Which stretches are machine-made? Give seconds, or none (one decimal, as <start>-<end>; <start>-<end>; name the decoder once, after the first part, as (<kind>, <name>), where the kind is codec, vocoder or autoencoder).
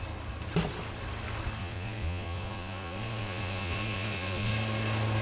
1.6-4.5 (vocoder, Vocos)